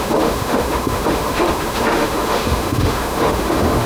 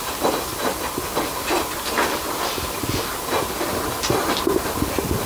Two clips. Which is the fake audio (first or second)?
first